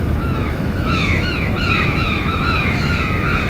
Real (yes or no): no